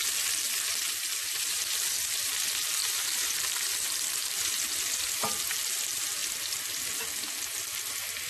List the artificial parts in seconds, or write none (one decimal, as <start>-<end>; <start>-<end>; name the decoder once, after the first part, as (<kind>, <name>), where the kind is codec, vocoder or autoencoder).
2.8-5.4 (vocoder, BigVGAN v2)